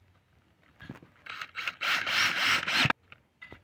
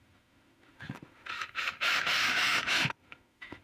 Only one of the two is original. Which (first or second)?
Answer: first